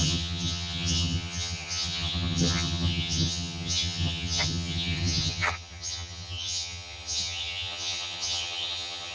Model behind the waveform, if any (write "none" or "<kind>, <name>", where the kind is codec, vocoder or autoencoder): vocoder, HiFi-GAN